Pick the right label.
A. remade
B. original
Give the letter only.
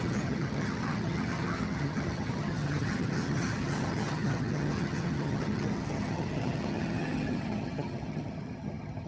A